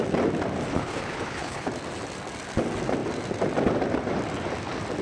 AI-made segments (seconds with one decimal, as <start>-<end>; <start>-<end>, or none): 0.7-1.7